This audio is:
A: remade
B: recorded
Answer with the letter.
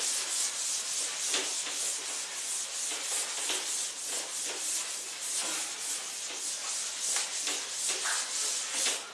B